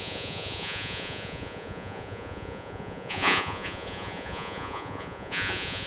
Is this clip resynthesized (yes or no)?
yes